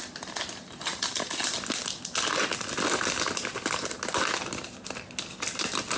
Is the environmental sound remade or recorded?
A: recorded